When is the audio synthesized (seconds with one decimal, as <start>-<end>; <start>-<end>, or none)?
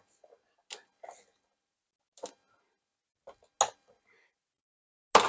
none